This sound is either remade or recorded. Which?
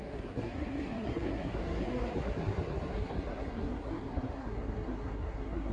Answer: remade